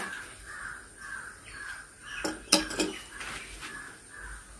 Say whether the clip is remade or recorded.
recorded